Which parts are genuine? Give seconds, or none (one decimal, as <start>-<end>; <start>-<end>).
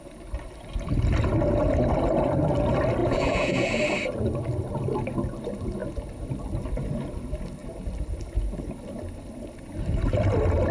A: 0.0-3.0; 3.8-10.7